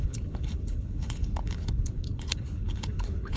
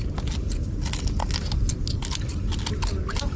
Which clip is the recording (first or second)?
second